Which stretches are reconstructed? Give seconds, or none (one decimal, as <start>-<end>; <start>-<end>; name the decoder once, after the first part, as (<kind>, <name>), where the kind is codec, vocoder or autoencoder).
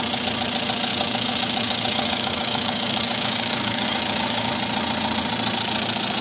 0.9-4.5 (codec, DAC)